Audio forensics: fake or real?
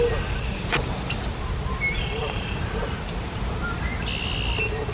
real